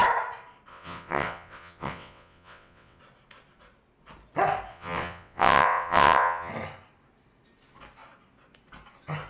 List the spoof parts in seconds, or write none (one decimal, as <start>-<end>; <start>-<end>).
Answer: 0.7-3.0; 4.7-6.5